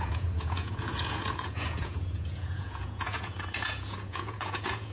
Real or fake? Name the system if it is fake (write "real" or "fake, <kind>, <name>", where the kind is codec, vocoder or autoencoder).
fake, vocoder, Vocos